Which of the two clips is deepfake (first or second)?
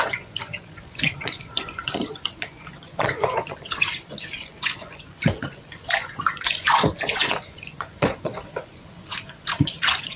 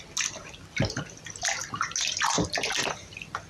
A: first